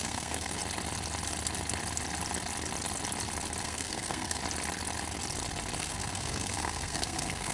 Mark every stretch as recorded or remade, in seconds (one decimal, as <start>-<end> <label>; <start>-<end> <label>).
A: 0.0-0.6 remade; 0.6-3.6 recorded; 3.6-4.4 remade; 4.4-5.8 recorded; 5.8-7.5 remade